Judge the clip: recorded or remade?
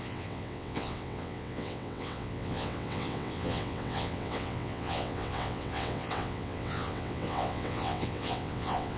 remade